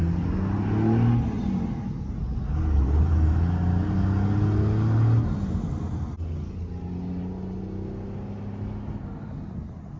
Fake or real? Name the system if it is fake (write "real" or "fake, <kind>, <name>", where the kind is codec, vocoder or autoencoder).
real